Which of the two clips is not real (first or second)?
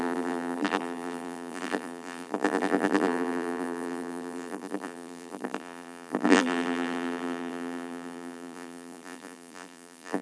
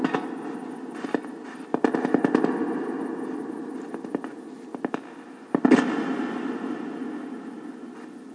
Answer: first